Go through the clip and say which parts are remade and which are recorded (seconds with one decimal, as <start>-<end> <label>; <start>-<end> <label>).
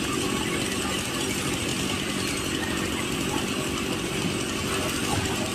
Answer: 0.0-5.5 recorded